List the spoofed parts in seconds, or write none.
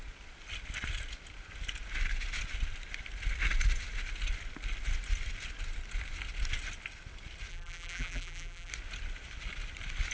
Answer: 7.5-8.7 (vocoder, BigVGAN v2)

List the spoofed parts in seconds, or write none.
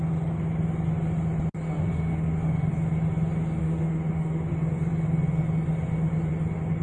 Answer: 1.9-2.7 (autoencoder, DAC-VAE); 3.6-4.5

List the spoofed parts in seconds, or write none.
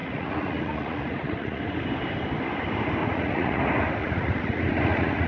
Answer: 0.0-1.6 (vocoder, Vocos); 3.0-3.6; 4.0-5.3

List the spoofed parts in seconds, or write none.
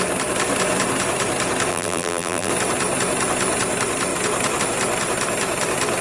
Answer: 1.7-2.5 (vocoder, BigVGAN v2)